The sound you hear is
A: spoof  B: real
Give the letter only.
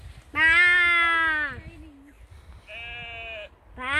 B